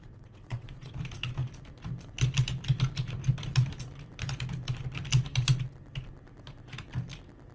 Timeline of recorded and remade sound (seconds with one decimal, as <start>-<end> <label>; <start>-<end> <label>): 0.0-0.9 remade; 0.9-7.5 recorded